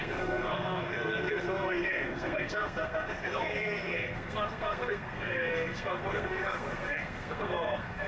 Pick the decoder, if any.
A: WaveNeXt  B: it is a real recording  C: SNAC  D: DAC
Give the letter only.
C